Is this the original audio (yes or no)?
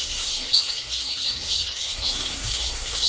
no